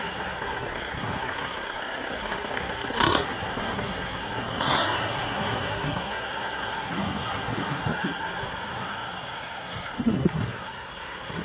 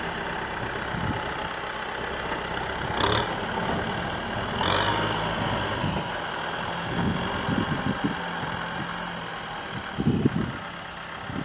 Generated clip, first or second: first